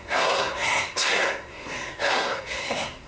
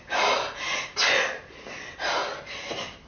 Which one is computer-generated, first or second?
first